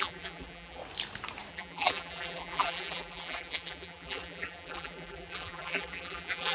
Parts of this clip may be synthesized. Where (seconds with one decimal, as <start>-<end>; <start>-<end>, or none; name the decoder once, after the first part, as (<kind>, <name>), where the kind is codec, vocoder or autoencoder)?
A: 0.0-0.8 (vocoder, BigVGAN v2); 1.5-6.5